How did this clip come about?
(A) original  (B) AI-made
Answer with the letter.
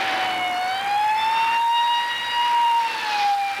A